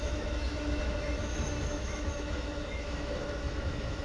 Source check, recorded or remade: remade